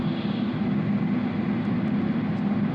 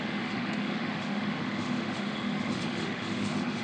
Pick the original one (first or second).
first